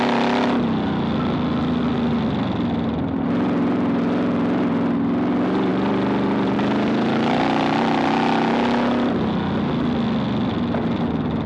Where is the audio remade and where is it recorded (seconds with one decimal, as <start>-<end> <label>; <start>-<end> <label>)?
0.0-11.5 recorded